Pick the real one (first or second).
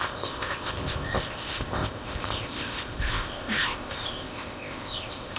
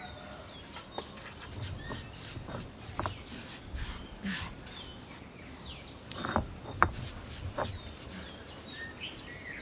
second